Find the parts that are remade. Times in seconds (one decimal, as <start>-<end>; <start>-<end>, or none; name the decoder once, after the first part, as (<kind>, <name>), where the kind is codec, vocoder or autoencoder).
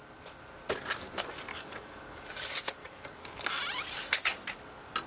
1.5-2.3 (codec, DAC); 2.8-3.6